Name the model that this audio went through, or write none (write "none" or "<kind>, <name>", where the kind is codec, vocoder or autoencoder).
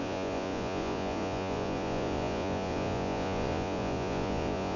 vocoder, Vocos